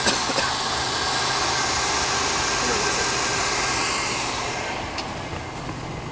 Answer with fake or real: real